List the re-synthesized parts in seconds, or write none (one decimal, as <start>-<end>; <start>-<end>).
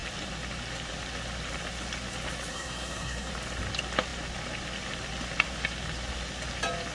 2.5-3.3